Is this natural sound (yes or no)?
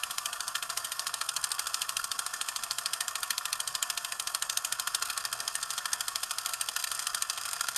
no